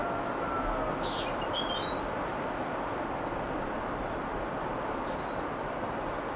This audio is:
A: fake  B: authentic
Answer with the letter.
B